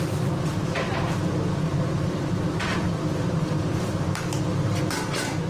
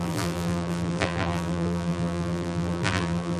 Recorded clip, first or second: first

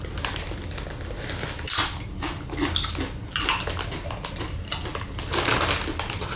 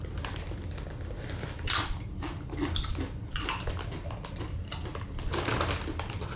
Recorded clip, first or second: first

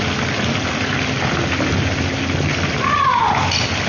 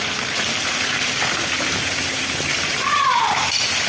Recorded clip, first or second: first